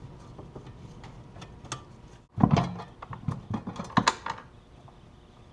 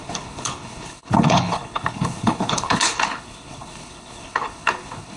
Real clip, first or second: first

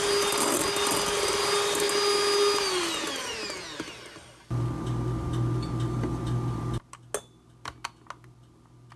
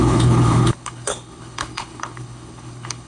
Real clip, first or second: first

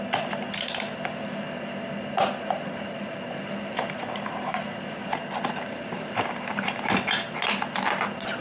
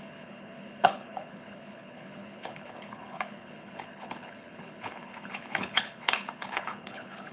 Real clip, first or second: first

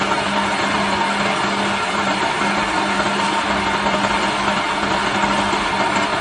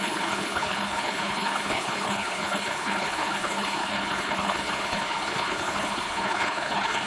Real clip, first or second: first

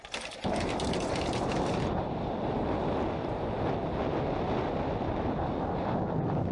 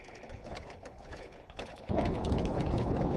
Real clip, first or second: first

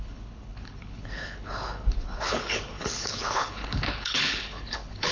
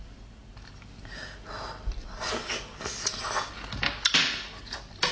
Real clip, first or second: second